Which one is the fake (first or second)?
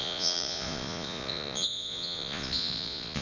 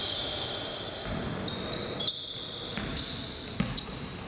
first